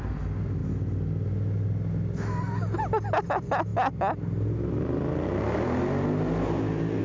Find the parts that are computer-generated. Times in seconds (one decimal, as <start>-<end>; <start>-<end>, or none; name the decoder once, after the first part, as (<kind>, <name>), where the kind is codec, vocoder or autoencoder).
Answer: none